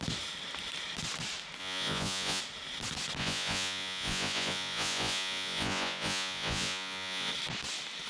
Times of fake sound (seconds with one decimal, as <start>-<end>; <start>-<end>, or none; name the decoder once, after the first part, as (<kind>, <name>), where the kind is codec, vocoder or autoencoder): 1.6-2.4 (vocoder, Vocos); 3.2-7.3